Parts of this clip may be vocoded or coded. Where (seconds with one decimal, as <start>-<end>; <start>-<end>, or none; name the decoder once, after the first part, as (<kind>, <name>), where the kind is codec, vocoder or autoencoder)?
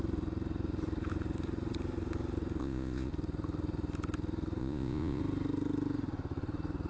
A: 2.6-3.1 (vocoder, Vocos); 4.6-5.2